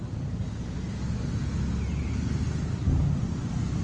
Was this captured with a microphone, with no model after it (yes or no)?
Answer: yes